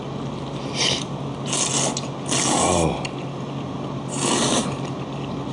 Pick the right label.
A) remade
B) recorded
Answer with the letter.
B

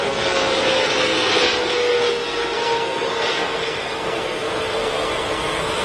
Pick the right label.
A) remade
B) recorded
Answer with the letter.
A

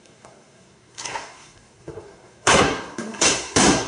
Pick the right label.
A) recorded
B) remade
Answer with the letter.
B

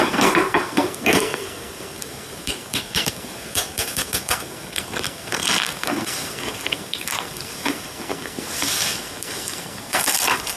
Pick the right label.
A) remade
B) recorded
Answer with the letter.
A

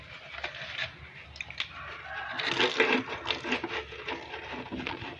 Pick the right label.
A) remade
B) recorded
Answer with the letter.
B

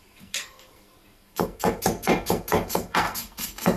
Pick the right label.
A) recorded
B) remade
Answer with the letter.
B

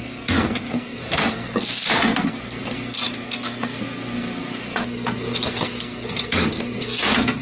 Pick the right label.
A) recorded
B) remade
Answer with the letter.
B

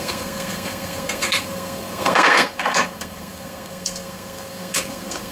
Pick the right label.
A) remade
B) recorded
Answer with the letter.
A